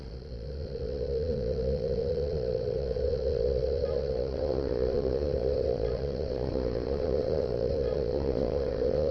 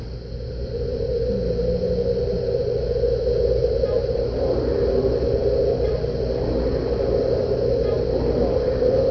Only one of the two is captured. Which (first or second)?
second